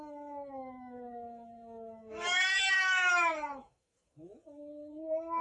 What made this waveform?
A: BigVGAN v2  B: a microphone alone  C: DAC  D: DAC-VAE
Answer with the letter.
D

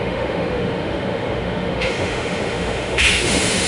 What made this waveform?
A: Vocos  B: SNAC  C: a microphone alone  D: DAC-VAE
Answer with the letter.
D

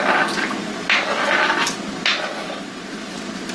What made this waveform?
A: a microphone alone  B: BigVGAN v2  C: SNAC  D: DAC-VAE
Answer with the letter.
A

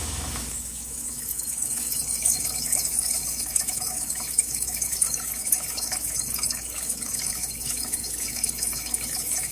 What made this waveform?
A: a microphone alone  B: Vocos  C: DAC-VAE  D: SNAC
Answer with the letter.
C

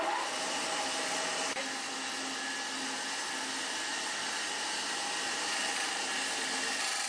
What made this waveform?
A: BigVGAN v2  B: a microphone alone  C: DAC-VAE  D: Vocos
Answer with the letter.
B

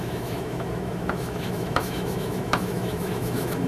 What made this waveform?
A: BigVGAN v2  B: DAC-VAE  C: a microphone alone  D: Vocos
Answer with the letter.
B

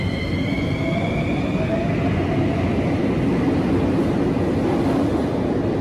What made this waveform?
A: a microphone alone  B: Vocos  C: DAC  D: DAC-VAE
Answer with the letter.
A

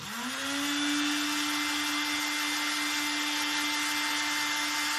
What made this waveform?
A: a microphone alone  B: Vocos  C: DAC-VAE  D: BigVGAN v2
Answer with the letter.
A